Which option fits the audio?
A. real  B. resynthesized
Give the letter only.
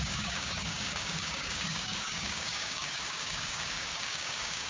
B